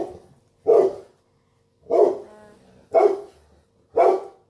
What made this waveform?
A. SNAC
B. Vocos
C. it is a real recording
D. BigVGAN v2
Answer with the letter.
C